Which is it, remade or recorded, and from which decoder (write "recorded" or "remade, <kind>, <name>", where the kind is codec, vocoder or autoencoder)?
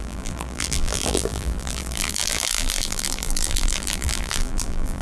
remade, vocoder, BigVGAN v2